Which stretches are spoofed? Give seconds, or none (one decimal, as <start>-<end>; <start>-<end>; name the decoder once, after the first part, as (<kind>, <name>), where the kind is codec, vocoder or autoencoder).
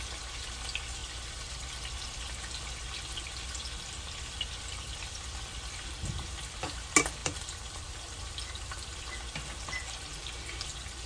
7.2-9.1 (vocoder, BigVGAN v2)